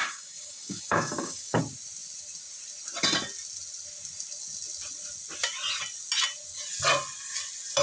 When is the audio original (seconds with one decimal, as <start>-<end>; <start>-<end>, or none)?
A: 1.6-7.8